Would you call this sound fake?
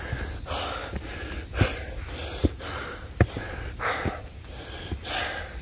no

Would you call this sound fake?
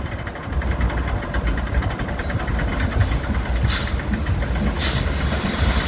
no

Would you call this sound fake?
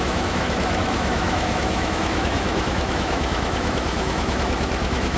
yes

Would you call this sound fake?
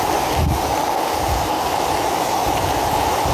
no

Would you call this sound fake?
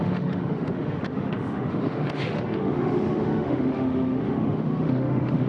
yes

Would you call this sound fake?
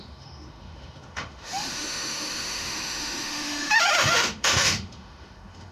yes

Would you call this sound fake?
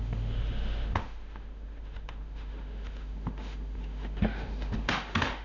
yes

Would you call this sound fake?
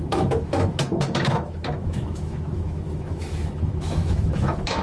yes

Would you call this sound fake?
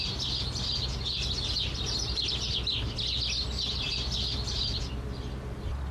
no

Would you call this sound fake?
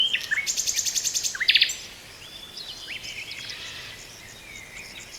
no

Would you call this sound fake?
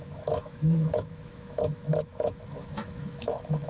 yes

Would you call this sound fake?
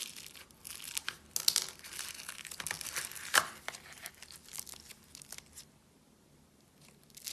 no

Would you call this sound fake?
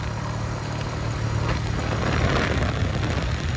no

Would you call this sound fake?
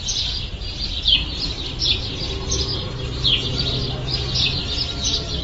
no